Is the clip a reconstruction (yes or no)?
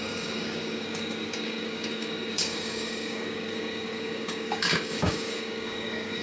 yes